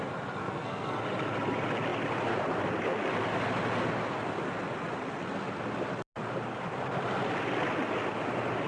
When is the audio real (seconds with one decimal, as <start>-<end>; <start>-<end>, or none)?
0.0-0.4; 1.0-8.7